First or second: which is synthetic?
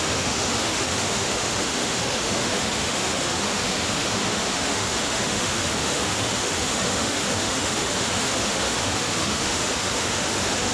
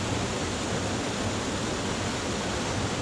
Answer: first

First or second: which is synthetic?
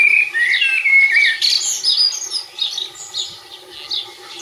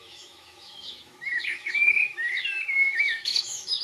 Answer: second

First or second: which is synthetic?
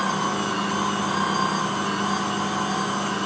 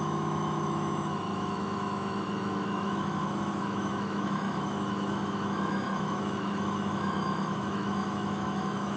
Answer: second